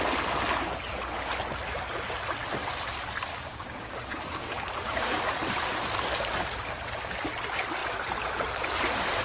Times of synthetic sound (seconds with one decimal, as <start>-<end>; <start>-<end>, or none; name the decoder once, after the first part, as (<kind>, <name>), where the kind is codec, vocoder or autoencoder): 3.3-5.2 (codec, DAC)